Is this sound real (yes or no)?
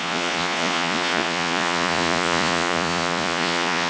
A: no